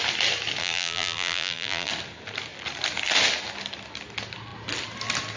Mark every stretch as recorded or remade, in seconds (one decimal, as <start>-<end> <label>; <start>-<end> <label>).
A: 0.0-0.6 recorded; 0.6-1.9 remade; 1.9-5.4 recorded